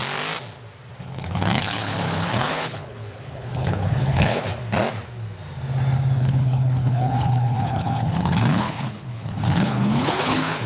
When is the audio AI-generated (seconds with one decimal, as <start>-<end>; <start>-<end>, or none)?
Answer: 1.0-4.5; 6.2-10.7